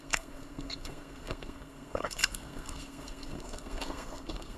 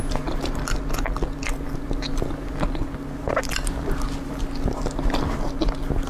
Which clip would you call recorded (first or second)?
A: second